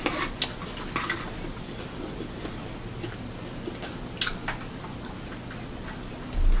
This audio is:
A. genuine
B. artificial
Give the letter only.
A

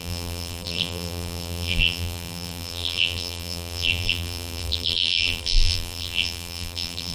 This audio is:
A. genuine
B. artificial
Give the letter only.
B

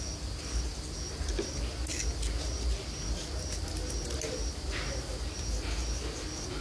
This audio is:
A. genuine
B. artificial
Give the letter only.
A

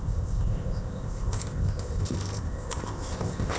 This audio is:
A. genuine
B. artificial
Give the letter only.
B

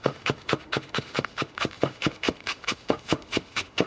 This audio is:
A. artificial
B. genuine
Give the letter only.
A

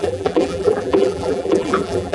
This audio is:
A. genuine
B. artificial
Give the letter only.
B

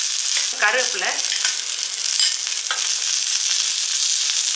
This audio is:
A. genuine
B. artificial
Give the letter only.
A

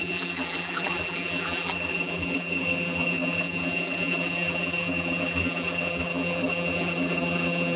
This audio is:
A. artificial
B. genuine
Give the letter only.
A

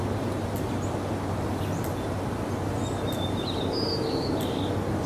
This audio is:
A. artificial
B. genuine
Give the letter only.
B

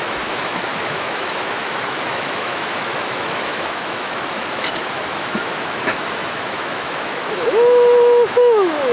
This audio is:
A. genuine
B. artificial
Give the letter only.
B